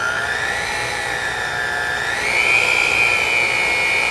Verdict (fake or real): real